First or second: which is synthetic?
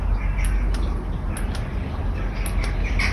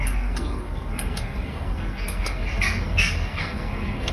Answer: second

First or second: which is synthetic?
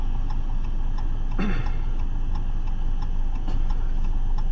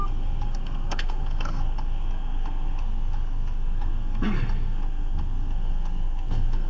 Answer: second